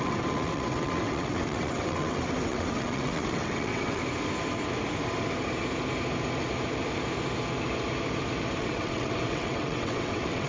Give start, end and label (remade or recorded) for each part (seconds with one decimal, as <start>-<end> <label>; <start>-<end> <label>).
0.0-4.0 remade; 4.0-8.6 recorded; 8.6-10.5 remade